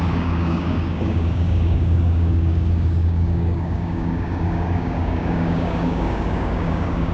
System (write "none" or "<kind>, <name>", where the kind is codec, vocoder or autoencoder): codec, DAC